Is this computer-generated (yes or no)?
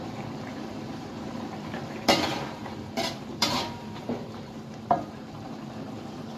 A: yes